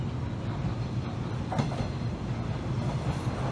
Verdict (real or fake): real